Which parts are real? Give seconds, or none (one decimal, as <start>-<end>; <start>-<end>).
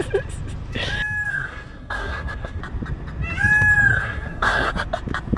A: 0.0-1.3; 2.6-3.9; 4.7-5.4